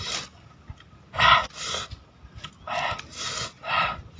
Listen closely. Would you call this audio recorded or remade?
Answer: recorded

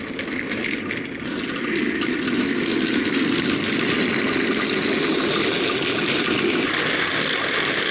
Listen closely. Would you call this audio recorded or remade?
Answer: recorded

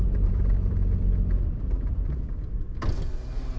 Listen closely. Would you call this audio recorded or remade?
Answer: recorded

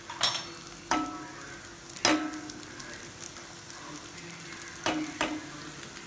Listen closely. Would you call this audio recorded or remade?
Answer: recorded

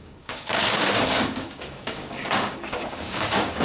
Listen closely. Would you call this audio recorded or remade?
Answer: remade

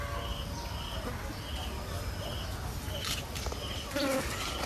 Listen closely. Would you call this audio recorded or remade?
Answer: recorded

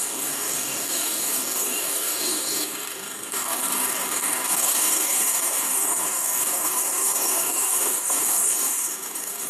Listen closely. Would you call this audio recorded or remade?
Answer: remade